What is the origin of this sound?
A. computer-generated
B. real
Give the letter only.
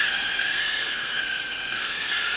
A